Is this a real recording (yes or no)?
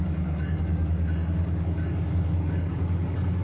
no